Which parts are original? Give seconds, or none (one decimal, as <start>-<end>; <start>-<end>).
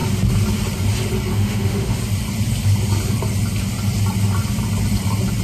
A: 0.0-1.3; 2.0-5.4